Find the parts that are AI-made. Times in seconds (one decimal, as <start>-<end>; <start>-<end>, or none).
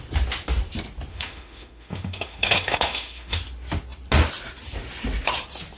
1.1-3.4